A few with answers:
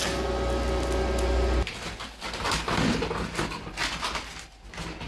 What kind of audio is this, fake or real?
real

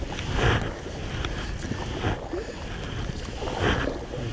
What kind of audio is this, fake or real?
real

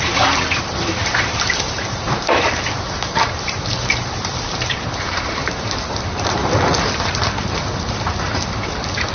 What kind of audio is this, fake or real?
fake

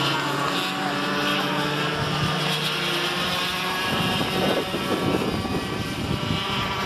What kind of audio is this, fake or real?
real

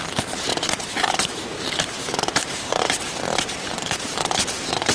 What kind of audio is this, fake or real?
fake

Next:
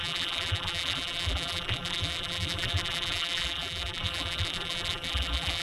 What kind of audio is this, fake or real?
fake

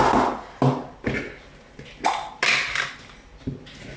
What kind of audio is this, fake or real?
real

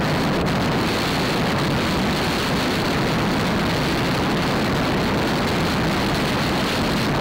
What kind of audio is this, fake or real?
real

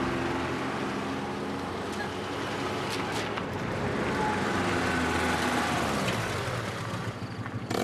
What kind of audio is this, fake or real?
real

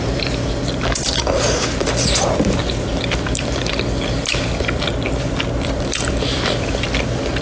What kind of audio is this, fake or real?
fake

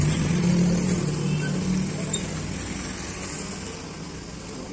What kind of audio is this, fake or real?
real